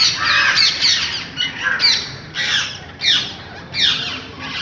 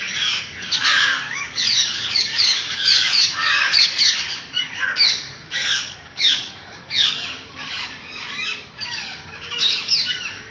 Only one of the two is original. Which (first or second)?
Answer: first